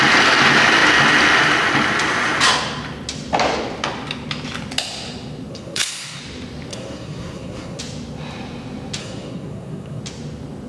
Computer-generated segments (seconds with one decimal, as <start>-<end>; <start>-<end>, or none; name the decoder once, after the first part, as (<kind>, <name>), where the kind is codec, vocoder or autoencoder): 5.5-6.2 (codec, SNAC); 6.7-7.8; 9.0-10.0